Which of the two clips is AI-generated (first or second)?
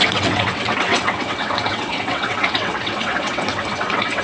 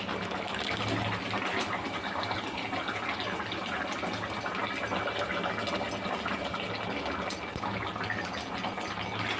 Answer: first